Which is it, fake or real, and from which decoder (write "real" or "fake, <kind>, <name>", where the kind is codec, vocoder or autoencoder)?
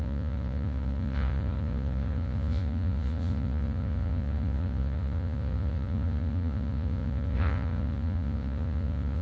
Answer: fake, vocoder, Vocos